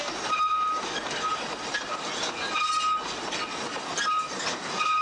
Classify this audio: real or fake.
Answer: real